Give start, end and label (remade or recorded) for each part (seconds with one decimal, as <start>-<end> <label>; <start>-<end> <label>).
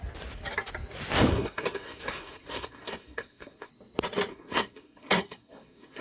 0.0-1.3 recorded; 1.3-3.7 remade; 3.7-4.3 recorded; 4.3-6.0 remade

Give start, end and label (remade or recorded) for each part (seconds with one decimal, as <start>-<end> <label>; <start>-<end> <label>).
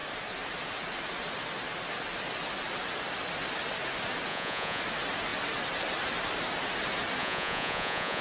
0.0-4.3 recorded; 4.3-4.8 remade; 4.8-7.2 recorded; 7.2-8.2 remade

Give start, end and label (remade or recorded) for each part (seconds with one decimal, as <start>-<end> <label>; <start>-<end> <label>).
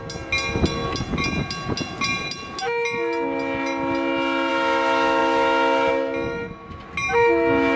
0.0-7.8 recorded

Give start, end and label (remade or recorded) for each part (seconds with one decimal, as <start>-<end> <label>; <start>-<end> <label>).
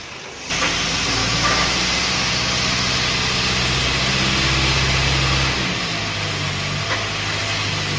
0.0-1.2 recorded; 1.2-1.8 remade; 1.8-8.0 recorded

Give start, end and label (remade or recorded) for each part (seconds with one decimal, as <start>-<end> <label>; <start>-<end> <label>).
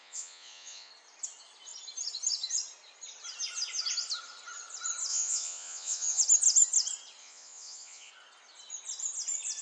0.0-0.9 remade; 0.9-5.1 recorded; 5.1-6.2 remade; 6.2-7.2 recorded; 7.2-8.1 remade; 8.1-9.6 recorded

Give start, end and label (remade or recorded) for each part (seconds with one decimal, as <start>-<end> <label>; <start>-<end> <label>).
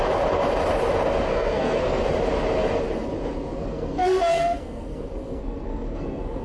0.0-1.3 recorded; 1.3-2.0 remade; 2.0-3.5 recorded; 3.5-6.4 remade